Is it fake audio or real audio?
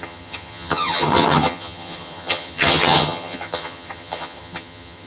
fake